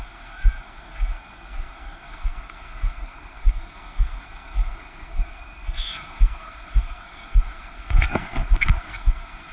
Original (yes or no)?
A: no